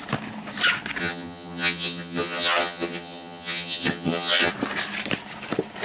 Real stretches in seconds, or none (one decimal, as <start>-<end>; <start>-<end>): 0.0-1.0; 4.5-5.8